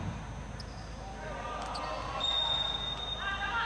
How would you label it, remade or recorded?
recorded